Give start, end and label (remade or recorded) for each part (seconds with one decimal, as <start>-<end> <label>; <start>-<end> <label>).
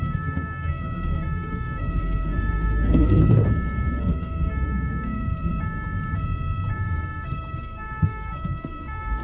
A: 0.0-3.2 remade; 3.2-4.0 recorded; 4.0-5.5 remade; 5.5-7.6 recorded; 7.6-9.2 remade